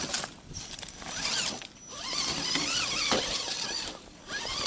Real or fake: real